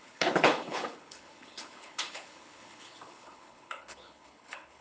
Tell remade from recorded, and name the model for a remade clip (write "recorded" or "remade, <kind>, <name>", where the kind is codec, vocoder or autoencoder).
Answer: remade, codec, HILCodec